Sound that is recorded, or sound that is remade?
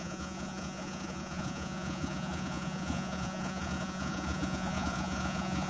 remade